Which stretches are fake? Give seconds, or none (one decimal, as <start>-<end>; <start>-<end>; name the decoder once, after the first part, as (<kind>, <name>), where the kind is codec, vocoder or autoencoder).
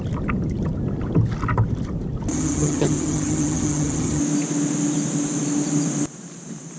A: 2.3-4.2 (vocoder, HiFi-GAN)